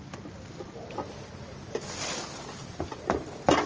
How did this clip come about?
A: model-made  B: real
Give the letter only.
B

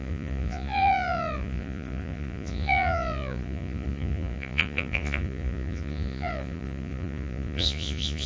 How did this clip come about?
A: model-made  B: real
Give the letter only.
A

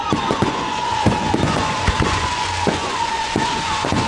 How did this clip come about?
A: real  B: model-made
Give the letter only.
B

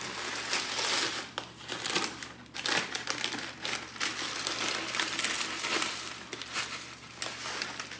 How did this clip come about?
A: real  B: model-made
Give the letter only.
A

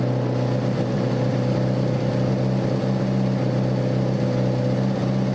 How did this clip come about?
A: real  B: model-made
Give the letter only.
A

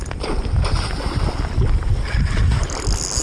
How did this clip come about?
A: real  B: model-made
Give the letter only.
A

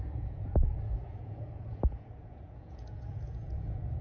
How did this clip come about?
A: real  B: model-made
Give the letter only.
B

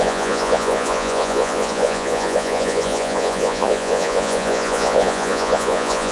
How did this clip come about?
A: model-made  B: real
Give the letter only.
A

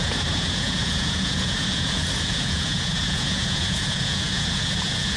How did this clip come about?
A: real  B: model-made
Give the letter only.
B